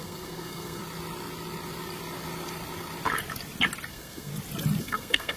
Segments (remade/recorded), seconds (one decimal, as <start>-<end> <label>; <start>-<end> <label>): 0.0-0.8 remade; 0.8-3.9 recorded; 3.9-4.3 remade; 4.3-4.8 recorded; 4.8-5.4 remade